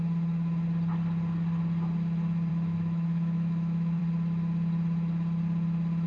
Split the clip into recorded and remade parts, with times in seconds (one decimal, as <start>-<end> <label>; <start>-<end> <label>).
0.0-2.5 recorded; 2.5-4.0 remade; 4.0-6.1 recorded